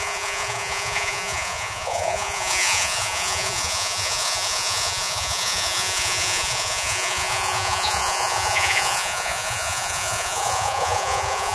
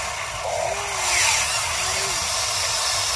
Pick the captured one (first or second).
second